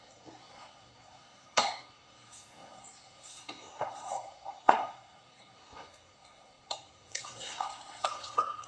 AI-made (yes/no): yes